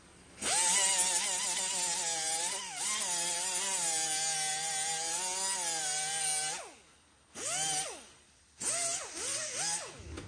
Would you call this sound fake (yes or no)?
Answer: no